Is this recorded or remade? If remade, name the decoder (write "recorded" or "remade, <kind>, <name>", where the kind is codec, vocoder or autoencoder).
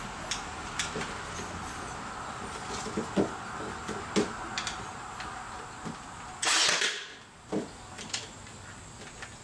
recorded